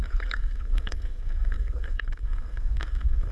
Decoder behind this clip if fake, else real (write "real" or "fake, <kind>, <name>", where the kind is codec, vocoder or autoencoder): fake, codec, SNAC